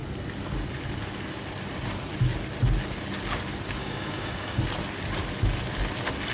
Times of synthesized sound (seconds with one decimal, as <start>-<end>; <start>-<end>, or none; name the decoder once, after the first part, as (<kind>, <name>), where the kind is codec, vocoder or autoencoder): 3.8-4.6 (codec, DAC)